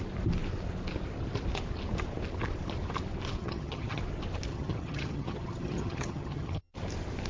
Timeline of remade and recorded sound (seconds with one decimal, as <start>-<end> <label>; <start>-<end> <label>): 0.0-3.4 recorded; 3.4-4.0 remade; 4.0-4.5 recorded; 4.5-6.7 remade; 6.7-7.3 recorded